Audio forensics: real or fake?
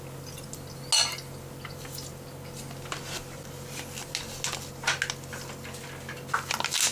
real